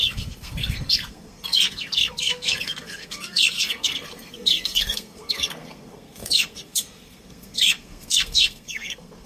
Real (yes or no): no